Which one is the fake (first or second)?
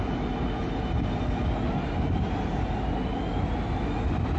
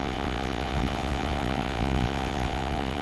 second